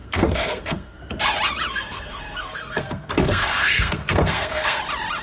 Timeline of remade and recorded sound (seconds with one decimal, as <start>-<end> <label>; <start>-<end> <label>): 0.0-1.0 remade; 1.0-1.7 recorded; 1.7-4.8 remade; 4.8-5.2 recorded